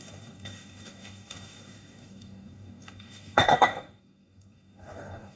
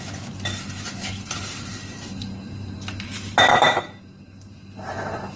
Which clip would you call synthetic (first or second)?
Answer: first